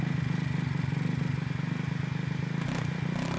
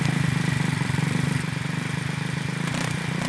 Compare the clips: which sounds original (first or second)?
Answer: first